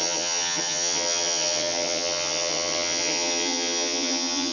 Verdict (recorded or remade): remade